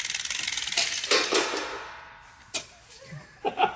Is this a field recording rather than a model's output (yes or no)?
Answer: yes